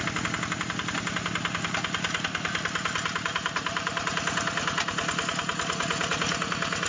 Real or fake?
real